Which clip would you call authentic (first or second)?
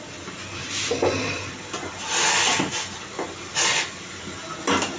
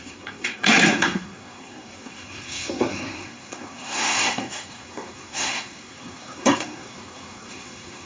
first